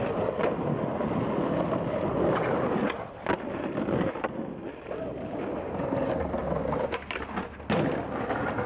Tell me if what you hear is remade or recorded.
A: recorded